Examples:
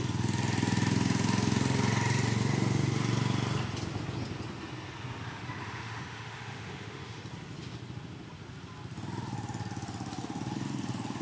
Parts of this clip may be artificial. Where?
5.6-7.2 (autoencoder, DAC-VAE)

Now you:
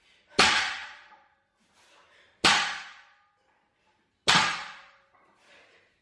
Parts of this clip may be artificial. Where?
none

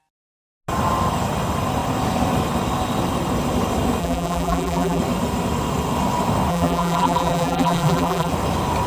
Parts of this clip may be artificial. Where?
4.0-5.0 (vocoder, BigVGAN v2); 6.5-8.3

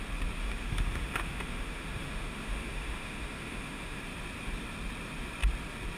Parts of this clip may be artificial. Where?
0.4-4.0 (autoencoder, DAC-VAE)